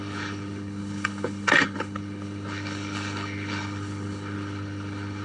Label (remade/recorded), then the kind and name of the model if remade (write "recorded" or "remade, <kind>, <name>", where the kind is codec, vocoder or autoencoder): remade, codec, HILCodec